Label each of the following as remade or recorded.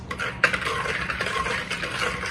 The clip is recorded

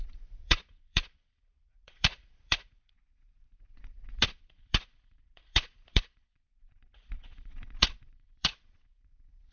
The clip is remade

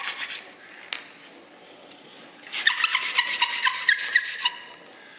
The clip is recorded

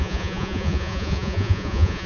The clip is remade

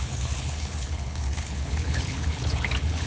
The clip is remade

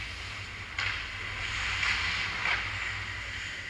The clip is recorded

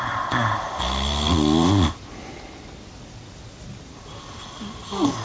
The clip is recorded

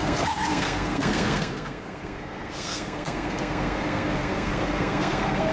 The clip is remade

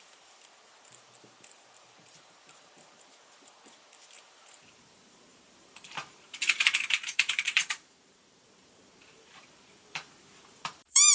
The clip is remade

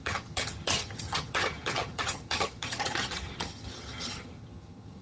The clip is remade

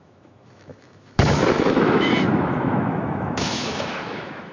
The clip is remade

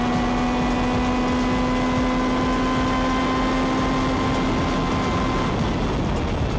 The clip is recorded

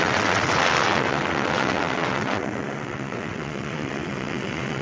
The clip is remade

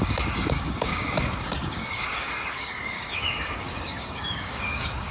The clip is remade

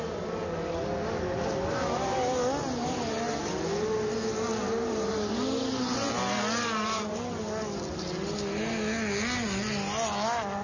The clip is recorded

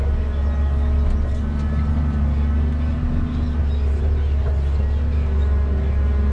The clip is recorded